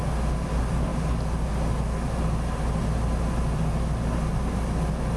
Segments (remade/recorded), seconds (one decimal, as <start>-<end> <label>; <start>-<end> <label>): 0.0-5.2 recorded